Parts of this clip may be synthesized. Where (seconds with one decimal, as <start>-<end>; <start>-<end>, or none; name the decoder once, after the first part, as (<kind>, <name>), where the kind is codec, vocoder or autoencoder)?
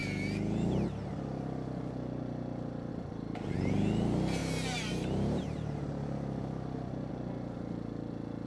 4.4-7.1 (vocoder, BigVGAN v2)